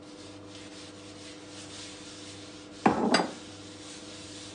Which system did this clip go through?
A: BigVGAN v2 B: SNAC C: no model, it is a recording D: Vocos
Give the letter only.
C